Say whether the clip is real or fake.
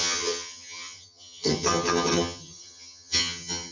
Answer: fake